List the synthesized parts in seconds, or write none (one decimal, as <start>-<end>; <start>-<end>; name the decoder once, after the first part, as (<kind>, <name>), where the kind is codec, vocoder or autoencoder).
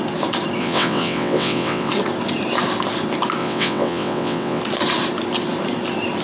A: 0.6-1.9 (vocoder, WaveNeXt); 3.4-4.6